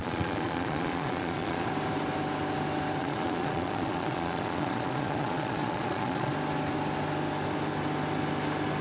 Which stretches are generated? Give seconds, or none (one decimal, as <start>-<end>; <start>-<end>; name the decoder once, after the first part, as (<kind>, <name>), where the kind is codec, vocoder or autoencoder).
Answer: 0.0-1.7 (vocoder, Vocos); 3.0-6.3